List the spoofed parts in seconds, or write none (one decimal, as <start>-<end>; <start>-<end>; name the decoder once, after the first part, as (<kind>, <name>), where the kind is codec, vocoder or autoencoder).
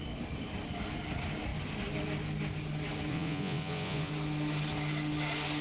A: 3.1-4.1 (vocoder, Vocos)